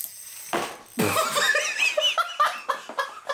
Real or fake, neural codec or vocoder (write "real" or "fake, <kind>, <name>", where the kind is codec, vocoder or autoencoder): real